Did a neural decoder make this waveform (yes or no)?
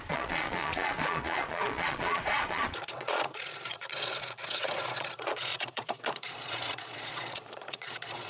yes